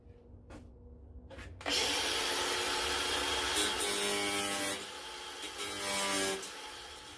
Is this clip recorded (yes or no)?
yes